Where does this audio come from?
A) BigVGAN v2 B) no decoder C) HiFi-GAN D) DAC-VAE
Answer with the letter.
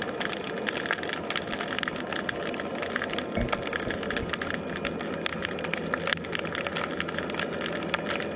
B